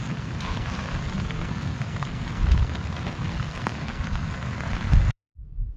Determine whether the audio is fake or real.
fake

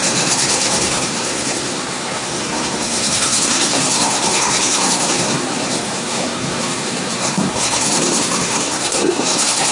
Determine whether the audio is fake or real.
fake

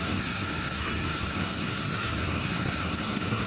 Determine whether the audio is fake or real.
fake